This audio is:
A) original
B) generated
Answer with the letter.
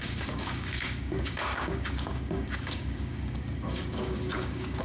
B